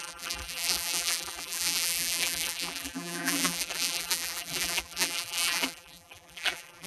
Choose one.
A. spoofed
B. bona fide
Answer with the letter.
A